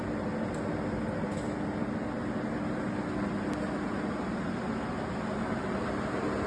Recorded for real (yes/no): yes